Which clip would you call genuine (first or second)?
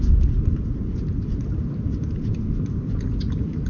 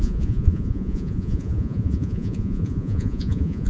first